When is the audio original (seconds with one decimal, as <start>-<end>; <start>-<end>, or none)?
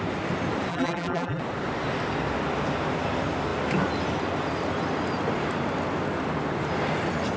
0.0-0.7; 1.4-7.4